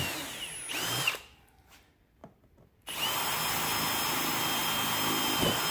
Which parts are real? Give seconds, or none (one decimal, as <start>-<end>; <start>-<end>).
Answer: 0.0-5.7